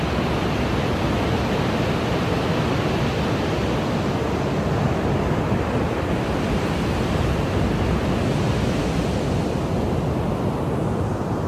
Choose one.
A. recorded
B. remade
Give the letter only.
A